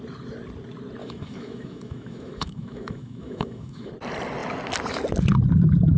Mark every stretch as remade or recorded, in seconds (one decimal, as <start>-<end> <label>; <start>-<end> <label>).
0.0-1.0 recorded; 1.0-3.9 remade; 3.9-6.0 recorded